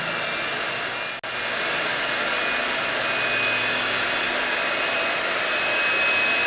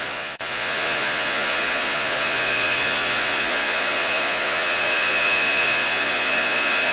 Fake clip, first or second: second